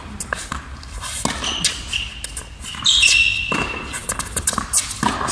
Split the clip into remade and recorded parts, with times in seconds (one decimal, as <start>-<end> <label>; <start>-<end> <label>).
0.0-5.3 recorded